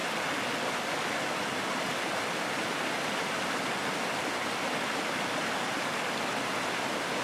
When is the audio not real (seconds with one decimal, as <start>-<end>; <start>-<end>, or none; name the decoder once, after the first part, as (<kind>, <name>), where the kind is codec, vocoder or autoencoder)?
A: none